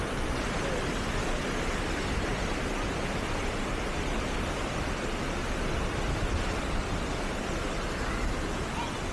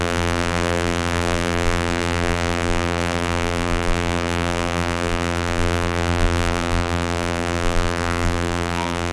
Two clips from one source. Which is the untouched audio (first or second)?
first